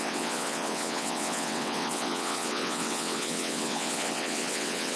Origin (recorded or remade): remade